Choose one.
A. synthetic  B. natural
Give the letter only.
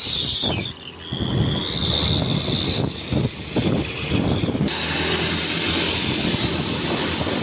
B